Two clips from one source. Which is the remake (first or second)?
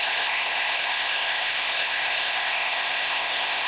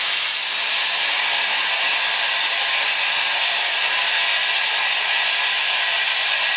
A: first